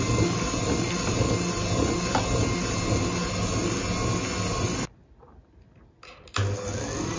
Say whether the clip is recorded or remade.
recorded